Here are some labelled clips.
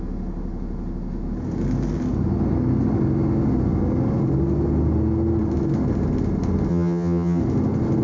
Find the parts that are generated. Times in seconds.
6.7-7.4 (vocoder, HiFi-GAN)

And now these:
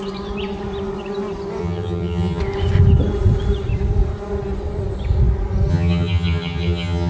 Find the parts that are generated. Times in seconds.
1.6-2.4 (vocoder, HiFi-GAN); 5.7-7.1

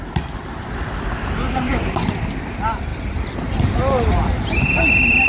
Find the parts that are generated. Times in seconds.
none

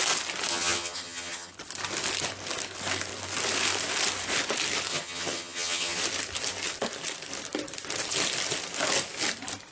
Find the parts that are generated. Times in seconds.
0.5-1.5 (vocoder, HiFi-GAN); 4.9-6.0

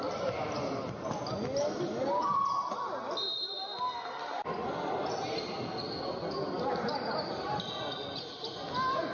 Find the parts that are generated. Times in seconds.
none